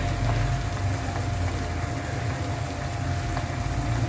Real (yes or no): yes